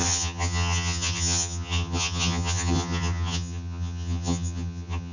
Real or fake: fake